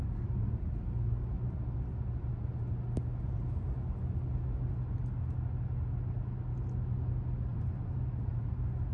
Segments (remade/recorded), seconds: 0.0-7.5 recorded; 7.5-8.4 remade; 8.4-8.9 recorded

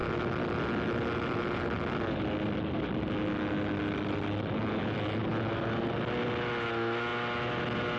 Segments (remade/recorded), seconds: 0.0-8.0 recorded